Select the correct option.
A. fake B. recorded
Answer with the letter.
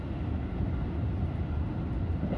B